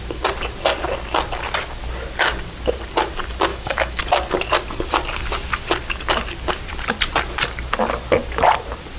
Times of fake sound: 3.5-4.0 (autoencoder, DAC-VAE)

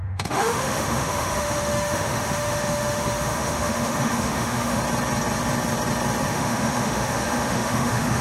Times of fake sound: 0.0-4.8 (autoencoder, DAC-VAE); 6.3-8.2